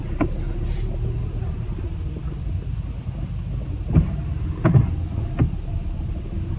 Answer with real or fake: real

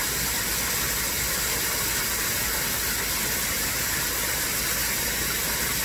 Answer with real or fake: real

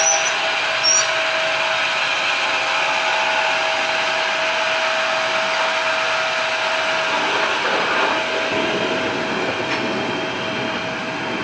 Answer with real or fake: real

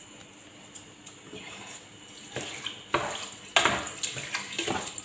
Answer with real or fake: real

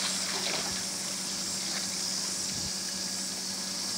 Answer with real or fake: real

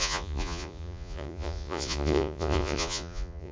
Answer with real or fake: fake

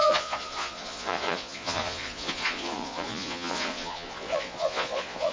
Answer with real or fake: fake